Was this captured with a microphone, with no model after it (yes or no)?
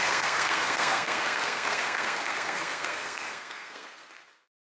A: no